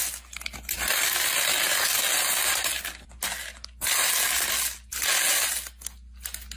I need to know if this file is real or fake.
real